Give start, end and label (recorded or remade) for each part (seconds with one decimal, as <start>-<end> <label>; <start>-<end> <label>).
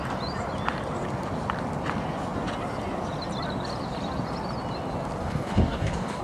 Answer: 0.0-5.2 recorded; 5.2-6.2 remade